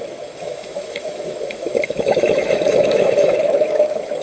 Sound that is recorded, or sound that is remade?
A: remade